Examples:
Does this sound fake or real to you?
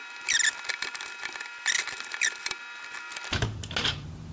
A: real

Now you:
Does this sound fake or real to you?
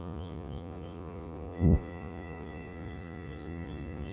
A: fake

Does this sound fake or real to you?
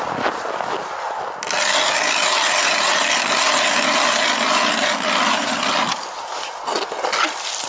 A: real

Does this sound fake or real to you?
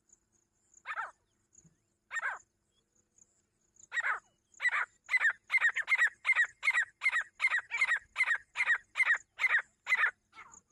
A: real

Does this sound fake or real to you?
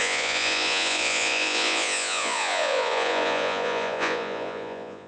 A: fake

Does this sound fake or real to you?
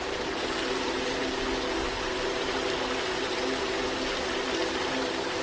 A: real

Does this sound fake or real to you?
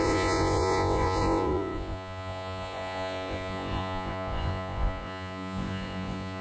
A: fake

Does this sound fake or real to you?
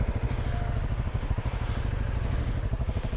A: real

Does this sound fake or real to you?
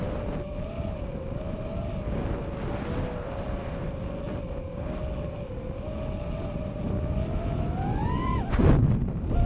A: real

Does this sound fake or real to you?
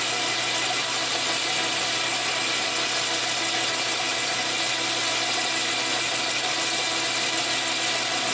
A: real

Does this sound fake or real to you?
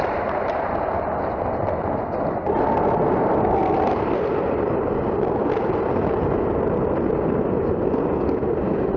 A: real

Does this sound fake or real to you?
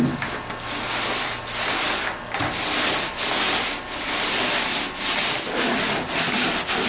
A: real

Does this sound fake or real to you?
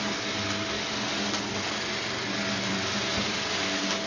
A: real